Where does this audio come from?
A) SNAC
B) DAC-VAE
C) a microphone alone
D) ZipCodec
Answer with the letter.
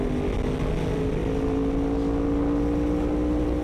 C